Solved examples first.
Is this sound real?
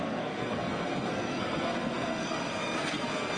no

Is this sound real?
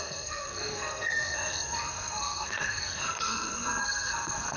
no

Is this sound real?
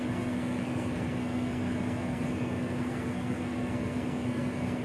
no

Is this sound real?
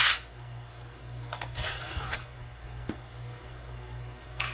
no